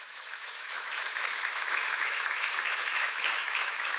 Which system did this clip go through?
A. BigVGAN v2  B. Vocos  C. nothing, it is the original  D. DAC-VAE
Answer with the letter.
D